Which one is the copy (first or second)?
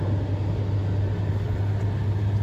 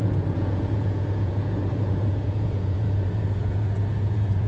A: second